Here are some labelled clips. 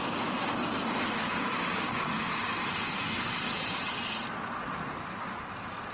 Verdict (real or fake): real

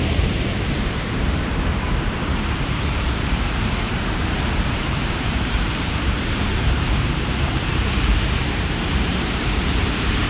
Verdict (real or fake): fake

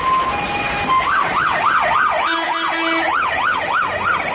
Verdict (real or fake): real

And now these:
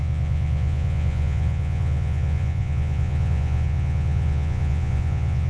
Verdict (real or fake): fake